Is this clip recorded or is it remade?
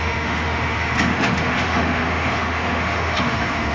remade